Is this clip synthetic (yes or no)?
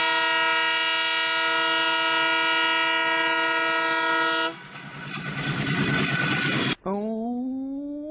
no